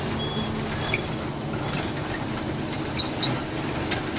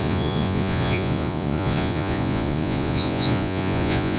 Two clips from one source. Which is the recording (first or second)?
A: first